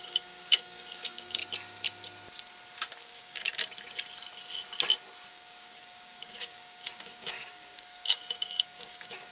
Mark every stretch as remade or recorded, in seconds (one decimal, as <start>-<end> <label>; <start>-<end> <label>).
0.0-1.4 remade; 1.4-3.0 recorded; 3.0-3.6 remade; 3.6-5.3 recorded; 5.3-9.3 remade